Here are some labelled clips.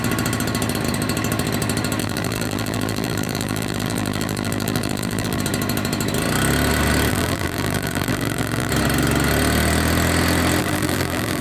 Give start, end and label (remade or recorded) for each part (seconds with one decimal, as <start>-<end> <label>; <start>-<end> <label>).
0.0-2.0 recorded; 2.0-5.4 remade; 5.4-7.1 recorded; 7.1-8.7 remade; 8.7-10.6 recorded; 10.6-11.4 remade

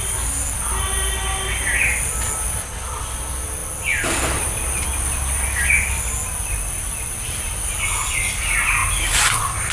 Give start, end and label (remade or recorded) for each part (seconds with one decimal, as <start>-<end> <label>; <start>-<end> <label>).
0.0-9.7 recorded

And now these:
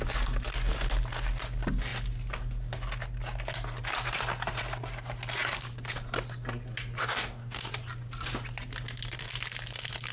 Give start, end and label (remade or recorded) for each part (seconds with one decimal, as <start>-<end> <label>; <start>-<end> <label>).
0.0-7.0 recorded; 7.0-7.7 remade; 7.7-10.1 recorded

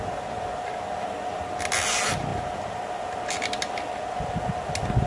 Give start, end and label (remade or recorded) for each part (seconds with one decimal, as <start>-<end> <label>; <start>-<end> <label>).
0.0-5.1 recorded

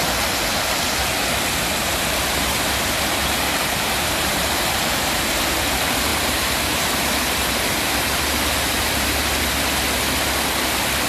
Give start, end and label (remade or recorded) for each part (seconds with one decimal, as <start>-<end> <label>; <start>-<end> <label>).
0.0-3.2 recorded; 3.2-5.2 remade; 5.2-6.1 recorded; 6.1-9.4 remade; 9.4-11.1 recorded

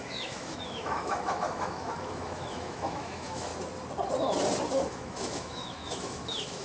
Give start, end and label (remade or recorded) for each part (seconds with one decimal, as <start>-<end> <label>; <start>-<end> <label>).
0.0-3.5 remade; 3.5-4.9 recorded; 4.9-6.6 remade

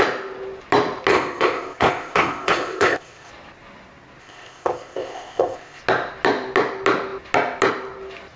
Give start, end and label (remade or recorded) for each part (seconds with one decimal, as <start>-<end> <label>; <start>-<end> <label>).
0.0-1.1 recorded; 1.1-3.3 remade; 3.3-4.2 recorded; 4.2-5.8 remade; 5.8-8.4 recorded